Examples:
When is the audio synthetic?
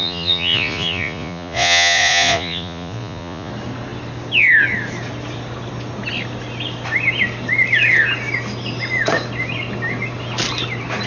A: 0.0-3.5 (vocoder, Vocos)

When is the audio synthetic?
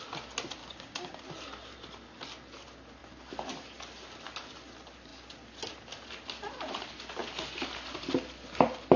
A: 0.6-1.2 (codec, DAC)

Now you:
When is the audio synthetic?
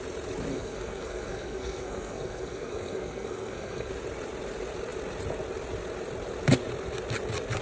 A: 0.5-3.9 (codec, SNAC)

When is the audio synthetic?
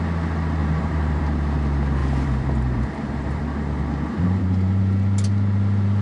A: 0.6-1.2 (vocoder, BigVGAN v2); 2.0-3.4; 4.1-4.8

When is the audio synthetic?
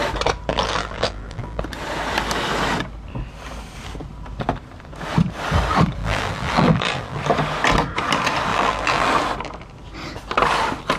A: 0.5-1.6 (vocoder, BigVGAN v2); 6.0-7.2; 8.5-9.1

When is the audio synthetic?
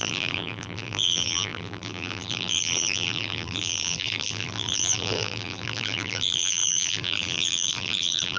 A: 0.0-8.4 (vocoder, BigVGAN v2)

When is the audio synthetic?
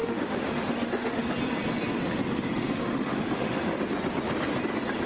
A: 0.0-1.2 (autoencoder, DAC-VAE); 2.5-3.8